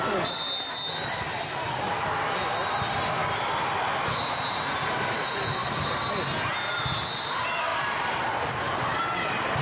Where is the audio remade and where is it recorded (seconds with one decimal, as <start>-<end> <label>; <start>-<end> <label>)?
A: 0.0-9.6 recorded